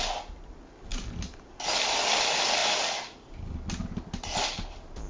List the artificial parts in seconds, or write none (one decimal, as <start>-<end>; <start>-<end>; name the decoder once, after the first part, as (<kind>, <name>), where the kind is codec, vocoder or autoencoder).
0.9-1.6 (vocoder, BigVGAN v2); 2.6-3.3